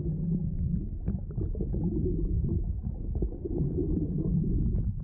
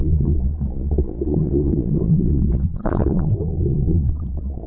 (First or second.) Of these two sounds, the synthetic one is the second